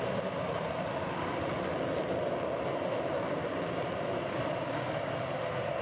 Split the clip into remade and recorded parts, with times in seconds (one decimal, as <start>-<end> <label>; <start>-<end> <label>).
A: 0.0-3.5 recorded; 3.5-4.6 remade; 4.6-5.8 recorded